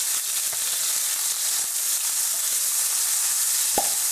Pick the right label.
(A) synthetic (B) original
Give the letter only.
B